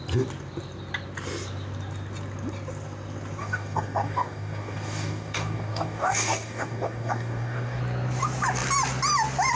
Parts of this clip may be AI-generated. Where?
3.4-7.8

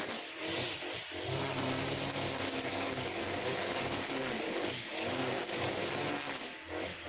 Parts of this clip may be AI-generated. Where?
2.7-5.8